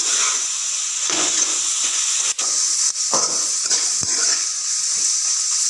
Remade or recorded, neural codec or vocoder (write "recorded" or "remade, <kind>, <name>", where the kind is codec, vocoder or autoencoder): remade, vocoder, Vocos